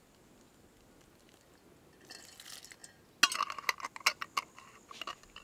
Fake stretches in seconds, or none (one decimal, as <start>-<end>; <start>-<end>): none